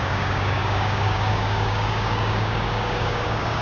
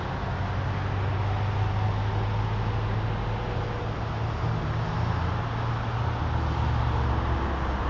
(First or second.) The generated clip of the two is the first